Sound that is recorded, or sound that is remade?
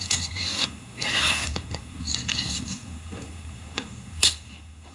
remade